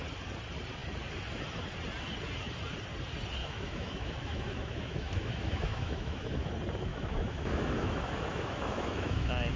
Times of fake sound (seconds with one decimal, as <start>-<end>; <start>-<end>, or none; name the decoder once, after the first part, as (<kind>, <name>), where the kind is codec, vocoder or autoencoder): 3.4-6.5 (autoencoder, DAC-VAE); 6.9-9.6